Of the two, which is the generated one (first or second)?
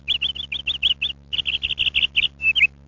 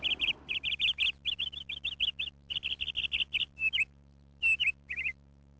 second